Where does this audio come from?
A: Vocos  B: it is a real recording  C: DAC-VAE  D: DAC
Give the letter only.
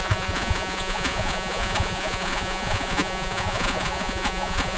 A